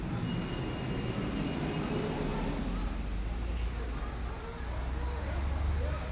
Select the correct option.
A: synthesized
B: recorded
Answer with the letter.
B